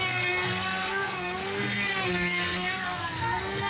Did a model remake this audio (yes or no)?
yes